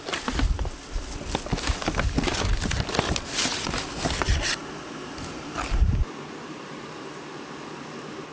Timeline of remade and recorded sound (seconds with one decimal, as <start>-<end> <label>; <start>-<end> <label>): 0.0-8.3 recorded